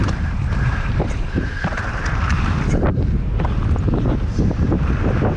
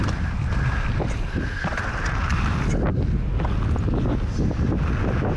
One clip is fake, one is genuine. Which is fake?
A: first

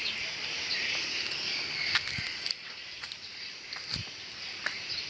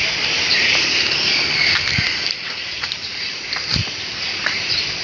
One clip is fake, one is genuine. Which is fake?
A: second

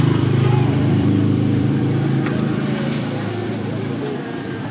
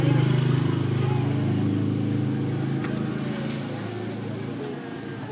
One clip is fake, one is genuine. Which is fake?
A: first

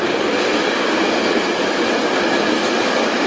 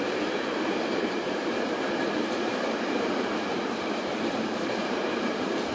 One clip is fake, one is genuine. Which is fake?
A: second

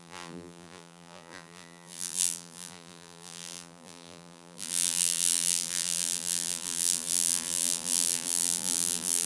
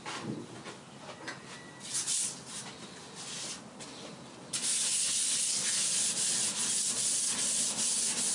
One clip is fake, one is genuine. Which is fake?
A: first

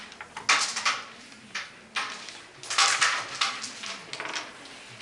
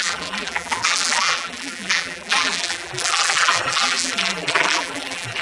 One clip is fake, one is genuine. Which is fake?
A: second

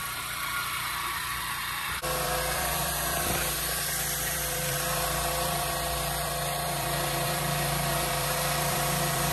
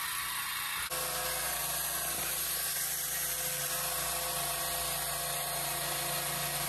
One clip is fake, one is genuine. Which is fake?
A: first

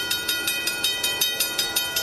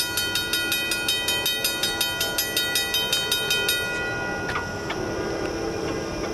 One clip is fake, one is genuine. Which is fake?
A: first